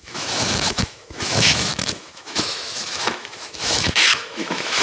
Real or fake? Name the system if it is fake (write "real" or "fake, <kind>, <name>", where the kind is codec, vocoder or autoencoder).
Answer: fake, autoencoder, DAC-VAE